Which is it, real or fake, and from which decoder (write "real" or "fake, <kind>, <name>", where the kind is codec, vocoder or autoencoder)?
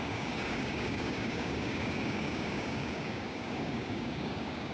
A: fake, codec, DAC